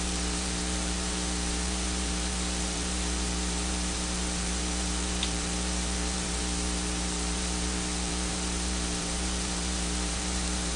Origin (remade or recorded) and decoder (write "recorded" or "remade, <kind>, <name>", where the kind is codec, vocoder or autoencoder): remade, vocoder, BigVGAN v2